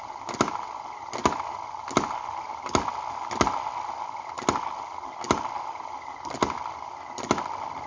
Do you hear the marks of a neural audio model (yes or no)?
no